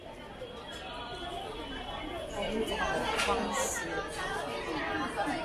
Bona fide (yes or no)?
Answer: yes